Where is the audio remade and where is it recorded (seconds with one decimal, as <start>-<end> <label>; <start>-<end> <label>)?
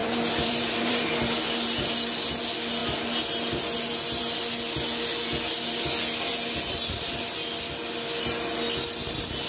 0.0-2.4 remade; 2.4-2.8 recorded; 2.8-4.2 remade; 4.2-9.5 recorded